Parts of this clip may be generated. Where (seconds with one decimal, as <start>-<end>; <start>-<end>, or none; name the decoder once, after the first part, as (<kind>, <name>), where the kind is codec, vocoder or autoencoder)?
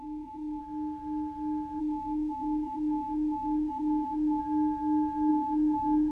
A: 0.0-0.6 (autoencoder, DAC-VAE); 1.8-4.4; 5.3-6.1